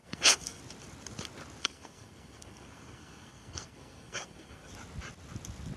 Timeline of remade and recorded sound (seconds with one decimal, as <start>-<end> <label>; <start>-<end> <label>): 0.0-0.6 remade; 0.6-1.6 recorded; 1.6-4.7 remade; 4.7-5.8 recorded